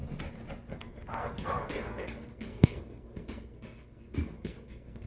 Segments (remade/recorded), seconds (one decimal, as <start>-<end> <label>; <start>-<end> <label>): 0.0-0.7 recorded; 0.7-5.1 remade